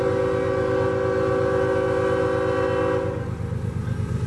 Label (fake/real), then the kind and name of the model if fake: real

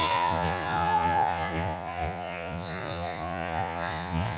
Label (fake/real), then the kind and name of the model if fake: fake, vocoder, Vocos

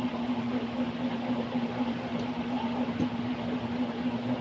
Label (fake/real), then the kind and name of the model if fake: real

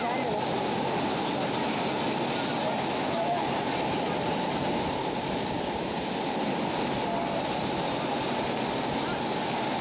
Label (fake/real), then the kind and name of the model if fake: real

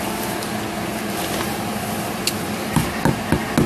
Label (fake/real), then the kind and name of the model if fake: real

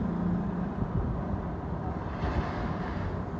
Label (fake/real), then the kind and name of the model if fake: real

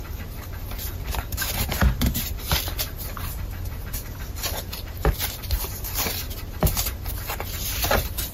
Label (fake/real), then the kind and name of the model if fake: real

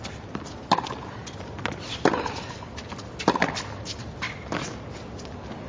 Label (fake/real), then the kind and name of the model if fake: real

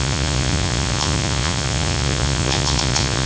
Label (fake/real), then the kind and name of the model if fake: fake, vocoder, Vocos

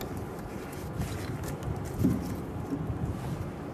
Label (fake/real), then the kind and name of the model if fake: real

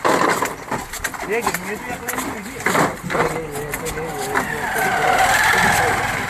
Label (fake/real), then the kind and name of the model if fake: real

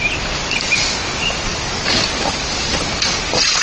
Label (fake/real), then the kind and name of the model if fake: real